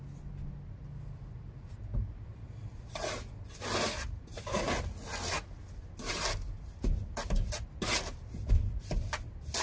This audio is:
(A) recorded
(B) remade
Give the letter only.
A